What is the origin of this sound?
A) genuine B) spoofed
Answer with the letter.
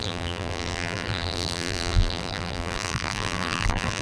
B